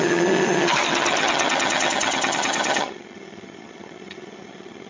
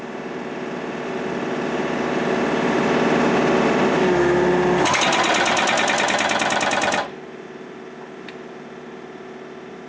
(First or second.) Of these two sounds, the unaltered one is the second